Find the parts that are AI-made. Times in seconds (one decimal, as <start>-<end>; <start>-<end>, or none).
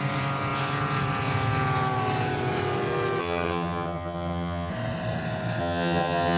3.2-4.7; 5.6-6.4